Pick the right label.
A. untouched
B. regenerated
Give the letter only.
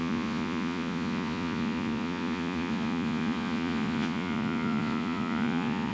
B